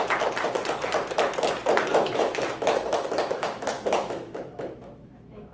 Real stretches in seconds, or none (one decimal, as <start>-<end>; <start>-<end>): 0.0-1.9